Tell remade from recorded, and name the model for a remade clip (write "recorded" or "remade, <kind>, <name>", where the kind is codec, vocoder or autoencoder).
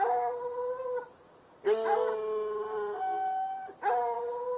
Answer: recorded